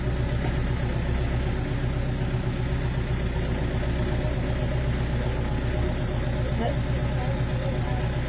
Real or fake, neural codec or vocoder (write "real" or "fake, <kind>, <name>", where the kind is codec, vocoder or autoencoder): real